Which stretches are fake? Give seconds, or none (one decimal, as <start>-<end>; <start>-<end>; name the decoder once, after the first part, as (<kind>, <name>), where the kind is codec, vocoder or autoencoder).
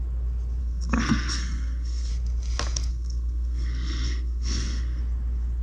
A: 0.6-2.1 (codec, SNAC); 2.9-5.0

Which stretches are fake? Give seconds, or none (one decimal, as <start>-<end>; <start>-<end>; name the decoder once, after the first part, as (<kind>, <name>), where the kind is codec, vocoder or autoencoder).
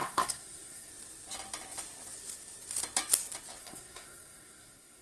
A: 0.0-0.9 (codec, SNAC); 3.6-5.0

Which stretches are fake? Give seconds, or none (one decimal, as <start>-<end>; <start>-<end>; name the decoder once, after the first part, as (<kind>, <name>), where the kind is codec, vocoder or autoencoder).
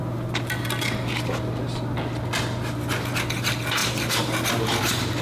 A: none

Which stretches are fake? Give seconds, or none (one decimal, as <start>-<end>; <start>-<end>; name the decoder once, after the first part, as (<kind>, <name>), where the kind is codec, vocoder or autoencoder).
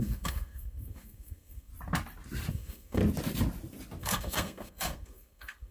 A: 0.0-1.7 (codec, SNAC); 2.5-3.0; 4.0-5.7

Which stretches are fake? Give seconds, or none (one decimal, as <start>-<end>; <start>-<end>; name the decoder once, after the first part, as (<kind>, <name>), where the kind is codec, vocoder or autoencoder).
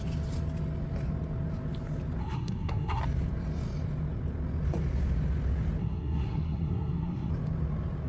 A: 2.2-3.0 (codec, SNAC); 5.8-7.3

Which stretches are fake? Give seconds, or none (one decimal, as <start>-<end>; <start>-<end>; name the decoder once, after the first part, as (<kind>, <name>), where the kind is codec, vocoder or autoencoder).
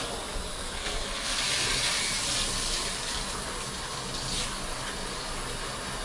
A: 0.5-1.4 (codec, SNAC)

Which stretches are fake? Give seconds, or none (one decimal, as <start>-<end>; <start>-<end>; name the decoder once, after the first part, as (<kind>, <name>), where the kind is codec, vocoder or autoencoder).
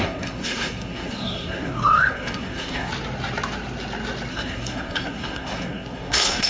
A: 0.0-2.9 (codec, SNAC); 4.3-6.5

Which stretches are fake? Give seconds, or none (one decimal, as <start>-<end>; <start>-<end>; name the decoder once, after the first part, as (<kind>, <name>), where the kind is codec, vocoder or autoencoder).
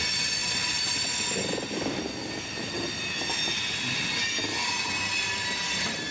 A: none